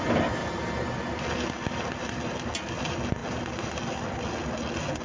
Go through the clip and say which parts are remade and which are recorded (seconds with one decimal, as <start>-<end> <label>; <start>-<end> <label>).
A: 0.0-5.0 recorded